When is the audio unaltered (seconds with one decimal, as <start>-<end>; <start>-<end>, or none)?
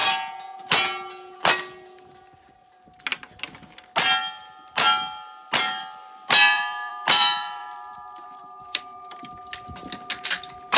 0.0-5.8; 9.3-10.8